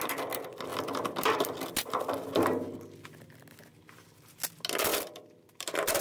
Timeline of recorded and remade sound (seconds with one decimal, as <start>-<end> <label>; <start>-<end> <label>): 0.0-0.7 recorded; 0.7-1.7 remade; 1.7-4.9 recorded; 4.9-6.0 remade